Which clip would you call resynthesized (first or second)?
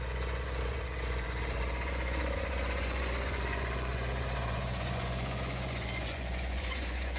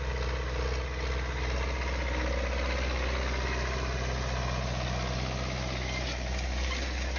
first